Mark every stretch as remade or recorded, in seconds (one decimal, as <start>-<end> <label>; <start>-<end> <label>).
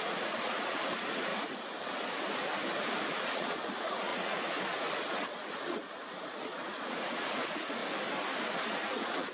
0.0-1.3 remade; 1.3-3.0 recorded; 3.0-7.8 remade; 7.8-8.7 recorded; 8.7-9.3 remade